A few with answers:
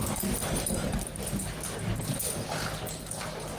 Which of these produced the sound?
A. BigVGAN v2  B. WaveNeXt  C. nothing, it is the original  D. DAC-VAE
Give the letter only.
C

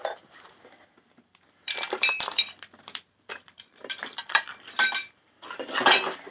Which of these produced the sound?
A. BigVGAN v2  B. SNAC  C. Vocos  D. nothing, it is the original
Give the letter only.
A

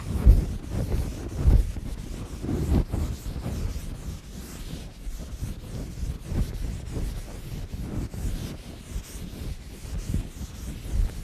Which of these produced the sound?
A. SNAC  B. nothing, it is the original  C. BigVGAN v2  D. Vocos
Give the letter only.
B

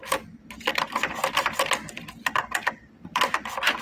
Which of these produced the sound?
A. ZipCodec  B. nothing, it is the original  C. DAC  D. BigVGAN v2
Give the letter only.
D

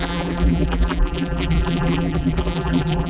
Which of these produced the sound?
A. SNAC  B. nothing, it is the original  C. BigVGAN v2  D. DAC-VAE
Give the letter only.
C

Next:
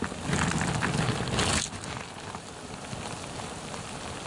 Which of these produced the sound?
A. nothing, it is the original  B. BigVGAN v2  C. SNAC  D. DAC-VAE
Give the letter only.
A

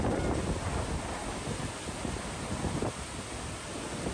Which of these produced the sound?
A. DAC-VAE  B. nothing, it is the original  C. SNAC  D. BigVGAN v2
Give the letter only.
B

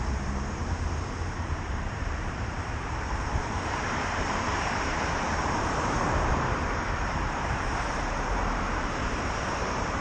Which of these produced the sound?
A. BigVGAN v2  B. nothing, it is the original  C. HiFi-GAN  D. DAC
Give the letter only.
A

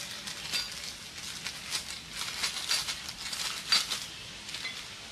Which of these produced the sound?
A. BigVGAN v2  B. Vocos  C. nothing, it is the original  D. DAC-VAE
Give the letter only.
C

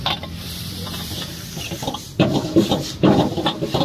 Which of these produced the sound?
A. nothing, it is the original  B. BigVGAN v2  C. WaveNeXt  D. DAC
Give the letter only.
B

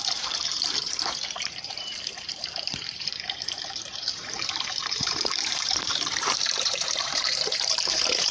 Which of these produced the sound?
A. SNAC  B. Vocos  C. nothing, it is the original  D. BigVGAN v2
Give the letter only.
D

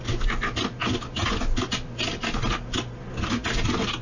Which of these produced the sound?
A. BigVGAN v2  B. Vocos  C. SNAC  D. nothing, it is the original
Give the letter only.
D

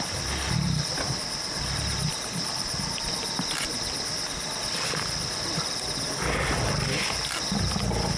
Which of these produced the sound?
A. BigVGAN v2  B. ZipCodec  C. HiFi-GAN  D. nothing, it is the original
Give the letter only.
D